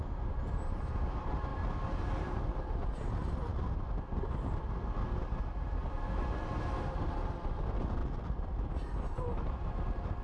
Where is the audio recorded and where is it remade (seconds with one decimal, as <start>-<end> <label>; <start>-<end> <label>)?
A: 0.0-10.2 recorded

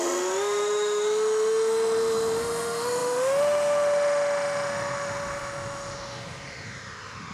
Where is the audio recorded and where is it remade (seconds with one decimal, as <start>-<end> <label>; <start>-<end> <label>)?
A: 0.0-7.3 remade

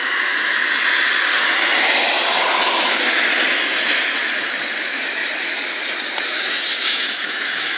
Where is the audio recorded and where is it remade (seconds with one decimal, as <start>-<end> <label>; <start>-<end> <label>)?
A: 0.0-0.6 remade; 0.6-4.8 recorded; 4.8-5.2 remade; 5.2-6.2 recorded; 6.2-7.8 remade

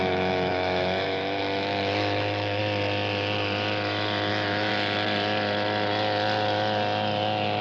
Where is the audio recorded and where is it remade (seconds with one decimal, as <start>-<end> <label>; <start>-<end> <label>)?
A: 0.0-2.6 remade; 2.6-4.3 recorded; 4.3-4.7 remade; 4.7-7.6 recorded

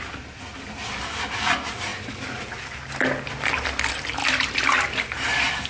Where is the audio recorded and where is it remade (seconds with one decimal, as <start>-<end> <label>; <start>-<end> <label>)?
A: 0.0-5.7 recorded

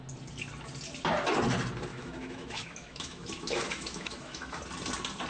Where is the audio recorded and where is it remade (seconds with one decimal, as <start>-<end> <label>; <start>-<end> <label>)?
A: 0.0-1.9 recorded; 1.9-4.6 remade; 4.6-5.3 recorded

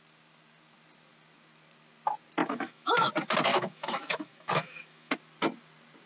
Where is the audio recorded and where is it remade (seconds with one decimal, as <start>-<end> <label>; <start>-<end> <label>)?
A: 0.0-2.4 recorded; 2.4-3.1 remade; 3.1-3.5 recorded; 3.5-5.1 remade; 5.1-6.1 recorded

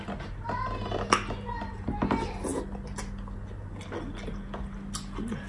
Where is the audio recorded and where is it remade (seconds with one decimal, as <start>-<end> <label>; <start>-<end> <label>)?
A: 0.0-5.5 recorded